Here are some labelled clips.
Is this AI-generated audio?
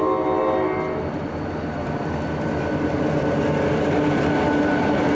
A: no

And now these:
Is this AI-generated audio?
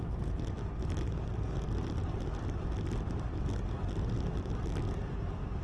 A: no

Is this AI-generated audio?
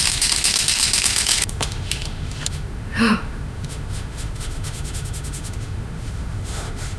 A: yes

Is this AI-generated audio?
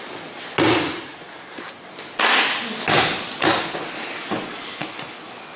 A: no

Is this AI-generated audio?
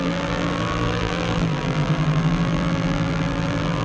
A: yes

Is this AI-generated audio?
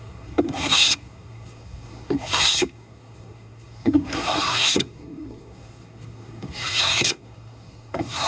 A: yes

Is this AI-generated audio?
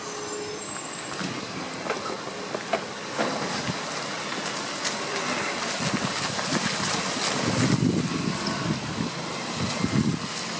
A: no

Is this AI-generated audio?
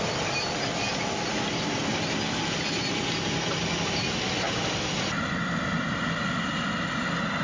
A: no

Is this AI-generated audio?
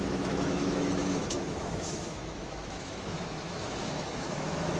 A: yes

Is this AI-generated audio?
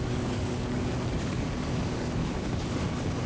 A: yes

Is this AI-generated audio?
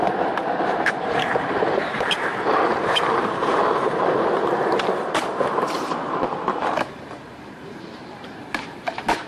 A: yes